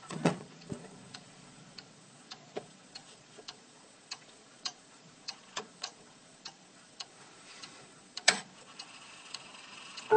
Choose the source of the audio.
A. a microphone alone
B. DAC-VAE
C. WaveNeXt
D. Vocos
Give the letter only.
D